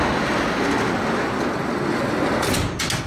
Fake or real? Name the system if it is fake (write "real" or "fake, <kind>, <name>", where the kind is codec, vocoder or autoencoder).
real